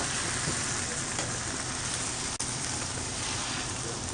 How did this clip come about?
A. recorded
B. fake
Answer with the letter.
A